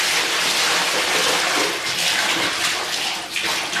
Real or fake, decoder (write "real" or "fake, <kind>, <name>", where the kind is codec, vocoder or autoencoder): real